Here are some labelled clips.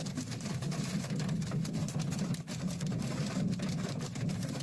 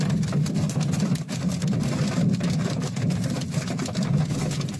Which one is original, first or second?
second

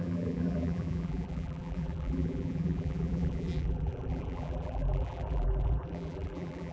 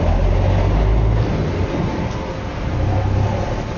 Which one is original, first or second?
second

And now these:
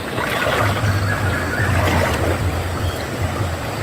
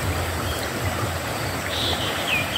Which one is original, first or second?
first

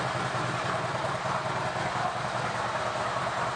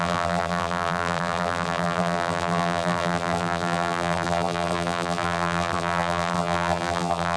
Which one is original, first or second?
first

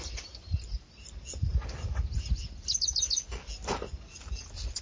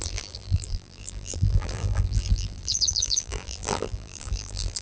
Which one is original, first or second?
first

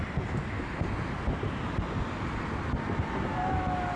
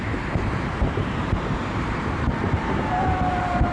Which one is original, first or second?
first